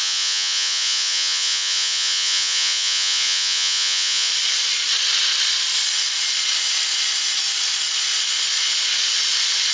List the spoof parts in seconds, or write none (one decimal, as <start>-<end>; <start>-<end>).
0.0-4.3